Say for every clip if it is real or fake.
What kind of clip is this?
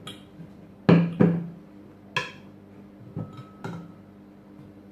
real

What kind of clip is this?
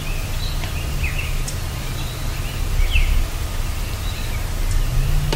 real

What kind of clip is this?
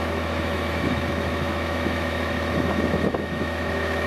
fake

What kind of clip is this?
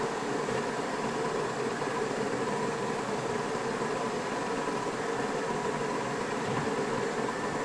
real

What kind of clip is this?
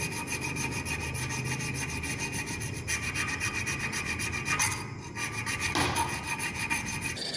real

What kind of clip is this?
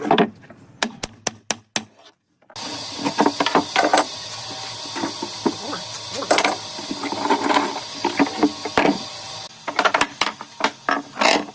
real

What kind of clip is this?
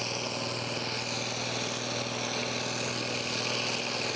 real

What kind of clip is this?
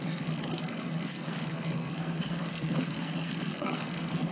fake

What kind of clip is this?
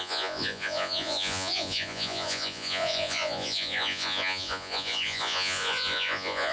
fake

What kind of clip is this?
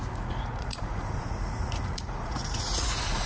fake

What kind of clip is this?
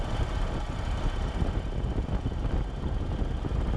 real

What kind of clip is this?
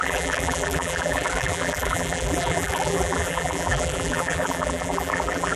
fake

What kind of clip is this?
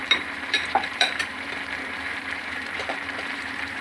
fake